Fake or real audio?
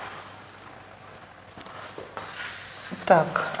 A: real